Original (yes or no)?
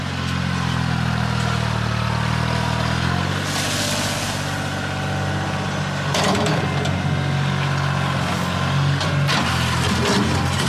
yes